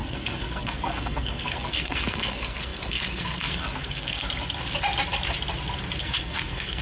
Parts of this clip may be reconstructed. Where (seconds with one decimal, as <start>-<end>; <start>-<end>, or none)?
0.0-4.2; 6.0-6.8